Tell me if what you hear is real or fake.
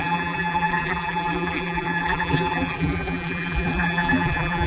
fake